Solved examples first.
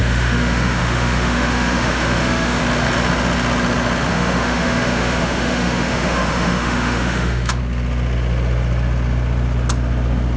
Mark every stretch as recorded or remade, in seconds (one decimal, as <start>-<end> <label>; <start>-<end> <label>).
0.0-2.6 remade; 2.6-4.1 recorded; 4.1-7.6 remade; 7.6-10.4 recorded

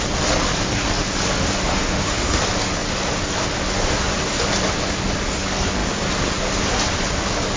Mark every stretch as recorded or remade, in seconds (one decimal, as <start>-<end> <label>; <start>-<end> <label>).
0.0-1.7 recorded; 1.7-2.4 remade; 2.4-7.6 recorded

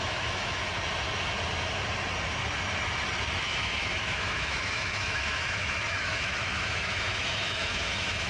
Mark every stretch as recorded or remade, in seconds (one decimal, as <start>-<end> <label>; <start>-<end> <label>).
0.0-0.6 remade; 0.6-3.4 recorded; 3.4-8.3 remade

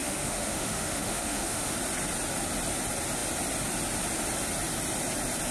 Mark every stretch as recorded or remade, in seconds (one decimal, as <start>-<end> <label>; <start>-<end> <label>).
0.0-1.7 remade; 1.7-5.5 recorded